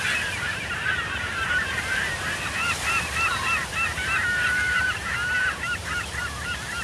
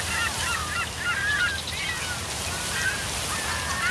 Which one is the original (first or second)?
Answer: second